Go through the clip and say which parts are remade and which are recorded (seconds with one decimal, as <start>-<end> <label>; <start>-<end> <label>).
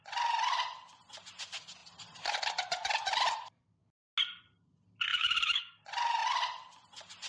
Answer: 0.0-5.1 recorded; 5.1-5.7 remade; 5.7-7.3 recorded